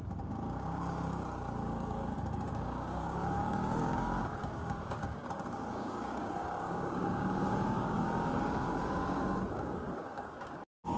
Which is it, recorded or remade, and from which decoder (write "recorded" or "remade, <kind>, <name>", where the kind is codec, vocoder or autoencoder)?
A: remade, codec, DAC